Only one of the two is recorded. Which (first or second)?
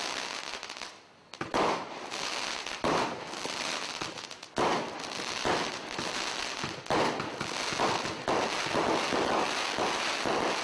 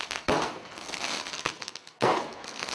first